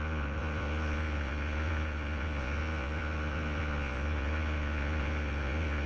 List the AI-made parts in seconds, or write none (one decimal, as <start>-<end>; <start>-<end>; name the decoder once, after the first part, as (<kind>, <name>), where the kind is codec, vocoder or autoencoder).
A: 0.0-5.9 (vocoder, Vocos)